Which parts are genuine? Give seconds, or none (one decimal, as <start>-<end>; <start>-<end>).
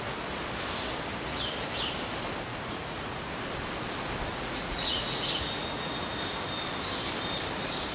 0.0-2.5; 3.3-4.3; 5.9-7.9